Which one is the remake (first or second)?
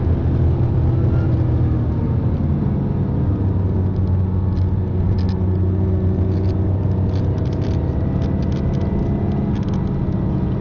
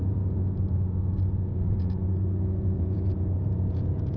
second